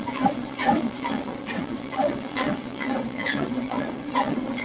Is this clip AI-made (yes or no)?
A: yes